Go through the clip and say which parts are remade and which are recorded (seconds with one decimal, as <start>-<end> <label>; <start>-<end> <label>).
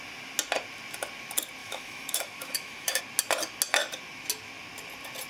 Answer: 0.0-1.6 recorded; 1.6-3.0 remade; 3.0-5.3 recorded